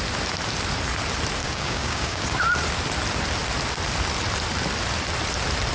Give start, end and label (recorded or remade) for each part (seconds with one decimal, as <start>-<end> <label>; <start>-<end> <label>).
0.0-1.4 recorded; 1.4-2.2 remade; 2.2-5.7 recorded